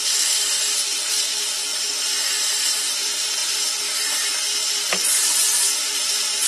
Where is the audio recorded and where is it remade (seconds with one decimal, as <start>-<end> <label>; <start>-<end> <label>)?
0.0-1.7 remade; 1.7-2.4 recorded; 2.4-6.5 remade